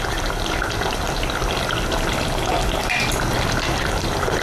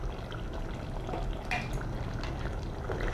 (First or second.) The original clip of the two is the second